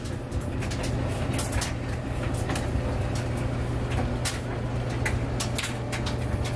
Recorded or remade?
recorded